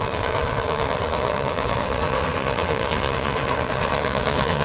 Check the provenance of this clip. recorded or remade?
remade